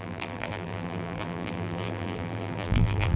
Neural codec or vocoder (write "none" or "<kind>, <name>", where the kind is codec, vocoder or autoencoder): vocoder, BigVGAN v2